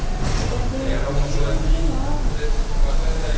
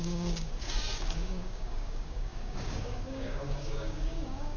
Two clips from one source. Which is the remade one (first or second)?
second